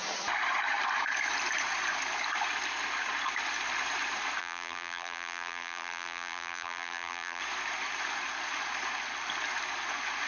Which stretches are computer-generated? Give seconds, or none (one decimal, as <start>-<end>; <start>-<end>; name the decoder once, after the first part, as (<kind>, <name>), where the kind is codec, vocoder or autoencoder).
4.4-7.4 (vocoder, BigVGAN v2)